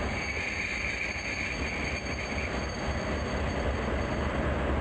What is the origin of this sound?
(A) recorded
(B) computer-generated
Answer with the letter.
A